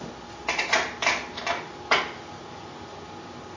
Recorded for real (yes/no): yes